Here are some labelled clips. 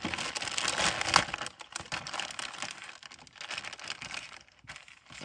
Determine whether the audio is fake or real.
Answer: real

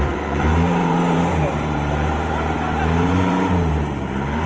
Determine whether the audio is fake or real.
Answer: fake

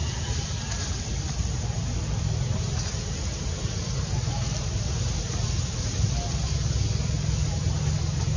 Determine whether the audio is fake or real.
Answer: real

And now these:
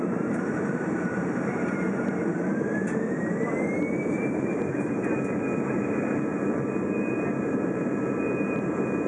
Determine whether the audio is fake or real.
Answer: fake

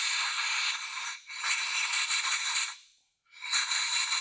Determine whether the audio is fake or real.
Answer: real